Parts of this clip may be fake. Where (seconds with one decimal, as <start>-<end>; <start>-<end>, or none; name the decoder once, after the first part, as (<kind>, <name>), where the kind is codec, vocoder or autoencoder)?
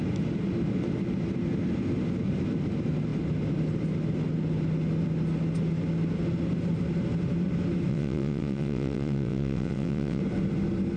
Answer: 7.9-10.2 (vocoder, WaveNeXt)